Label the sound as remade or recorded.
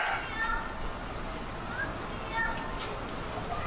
recorded